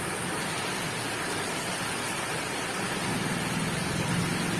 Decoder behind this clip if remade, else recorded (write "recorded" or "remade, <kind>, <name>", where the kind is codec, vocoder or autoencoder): recorded